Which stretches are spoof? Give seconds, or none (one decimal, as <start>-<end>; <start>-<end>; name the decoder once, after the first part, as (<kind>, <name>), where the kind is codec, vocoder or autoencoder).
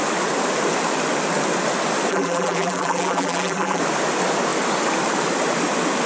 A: 2.1-3.8 (vocoder, BigVGAN v2)